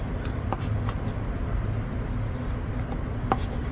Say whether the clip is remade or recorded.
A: recorded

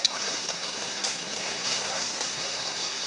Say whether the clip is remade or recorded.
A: remade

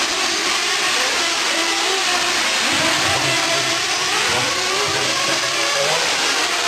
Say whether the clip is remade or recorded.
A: remade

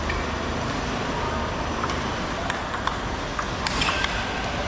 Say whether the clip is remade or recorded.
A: recorded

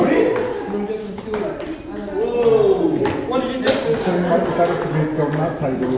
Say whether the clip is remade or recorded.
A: recorded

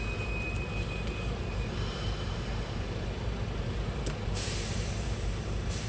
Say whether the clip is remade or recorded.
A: remade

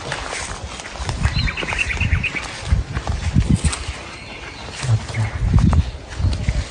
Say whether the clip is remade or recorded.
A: recorded